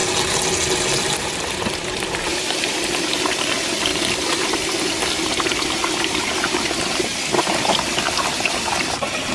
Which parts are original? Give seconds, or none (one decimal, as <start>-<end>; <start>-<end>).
0.0-9.3